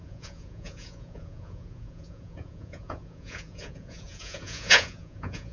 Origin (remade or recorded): remade